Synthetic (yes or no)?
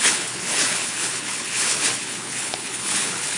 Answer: yes